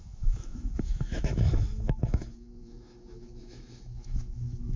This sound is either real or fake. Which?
fake